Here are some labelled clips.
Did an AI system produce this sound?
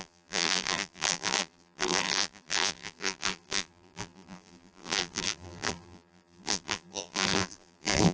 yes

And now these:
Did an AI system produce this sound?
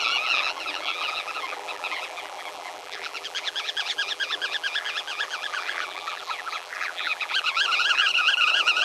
yes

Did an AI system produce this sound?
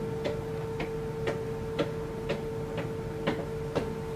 no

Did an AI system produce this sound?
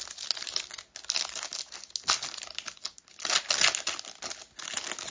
no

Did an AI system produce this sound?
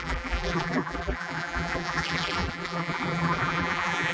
yes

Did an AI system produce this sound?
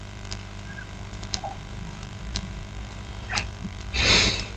yes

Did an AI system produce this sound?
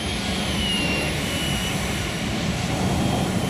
yes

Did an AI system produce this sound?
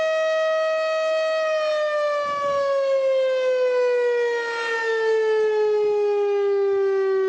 no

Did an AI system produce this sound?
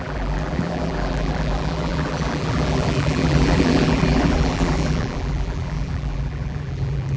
yes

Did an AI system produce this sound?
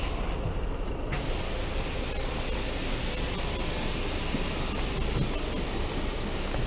no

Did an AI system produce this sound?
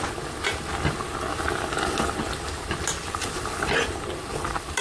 no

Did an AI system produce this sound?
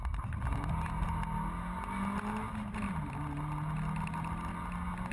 no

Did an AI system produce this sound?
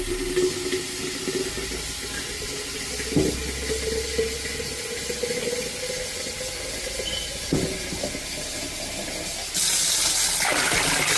no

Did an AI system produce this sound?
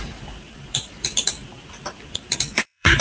yes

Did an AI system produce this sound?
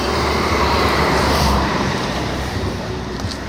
yes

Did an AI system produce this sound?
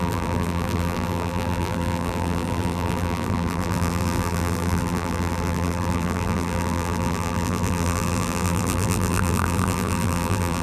yes